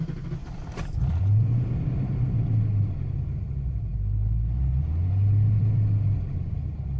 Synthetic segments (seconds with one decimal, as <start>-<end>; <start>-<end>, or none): 0.4-2.9